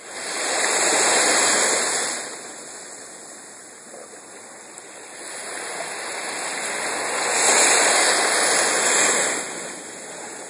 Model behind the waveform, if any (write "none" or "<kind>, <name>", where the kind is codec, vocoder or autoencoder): none